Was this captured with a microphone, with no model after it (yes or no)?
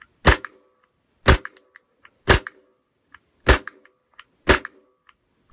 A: yes